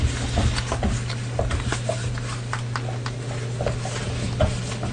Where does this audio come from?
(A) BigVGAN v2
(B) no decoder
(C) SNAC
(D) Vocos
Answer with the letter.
B